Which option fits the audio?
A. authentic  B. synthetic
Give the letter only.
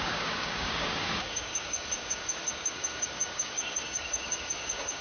B